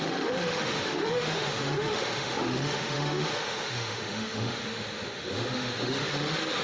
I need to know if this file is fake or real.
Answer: fake